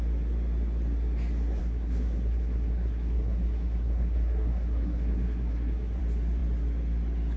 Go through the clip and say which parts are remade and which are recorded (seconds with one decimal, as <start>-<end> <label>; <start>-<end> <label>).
0.0-1.6 recorded; 1.6-6.0 remade; 6.0-7.4 recorded